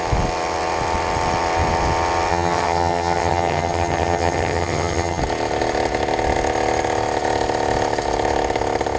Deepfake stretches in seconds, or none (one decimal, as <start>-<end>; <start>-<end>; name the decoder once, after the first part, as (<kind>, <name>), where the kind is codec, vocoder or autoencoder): 2.3-5.2 (vocoder, HiFi-GAN)